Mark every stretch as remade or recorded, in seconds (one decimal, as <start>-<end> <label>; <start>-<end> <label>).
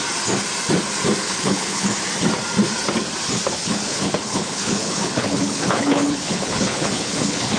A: 0.0-1.2 recorded; 1.2-1.9 remade; 1.9-3.6 recorded; 3.6-7.6 remade